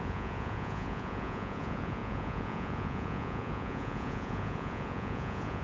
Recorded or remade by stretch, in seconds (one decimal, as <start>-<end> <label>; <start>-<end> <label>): 0.0-5.6 remade